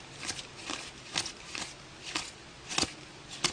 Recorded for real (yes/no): yes